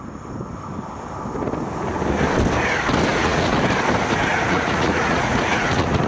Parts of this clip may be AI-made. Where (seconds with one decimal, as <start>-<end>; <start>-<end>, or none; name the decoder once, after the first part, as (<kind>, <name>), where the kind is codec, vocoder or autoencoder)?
3.1-3.6 (vocoder, Vocos); 4.3-6.1